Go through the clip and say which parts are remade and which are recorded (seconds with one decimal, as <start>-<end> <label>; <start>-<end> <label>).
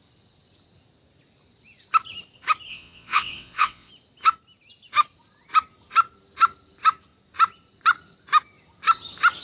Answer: 0.0-2.7 recorded; 2.7-3.9 remade; 3.9-9.4 recorded